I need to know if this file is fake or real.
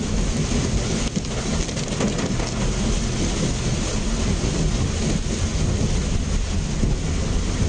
real